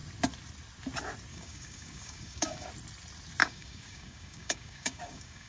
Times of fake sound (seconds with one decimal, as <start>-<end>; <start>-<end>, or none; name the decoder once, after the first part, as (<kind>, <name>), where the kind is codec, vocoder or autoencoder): 1.3-2.7 (codec, DAC); 3.4-5.5